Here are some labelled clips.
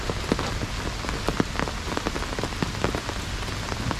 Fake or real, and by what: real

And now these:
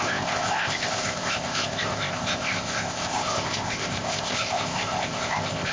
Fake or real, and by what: fake, codec, ZipCodec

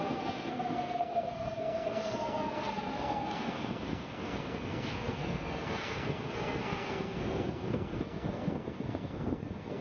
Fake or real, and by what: fake, codec, SNAC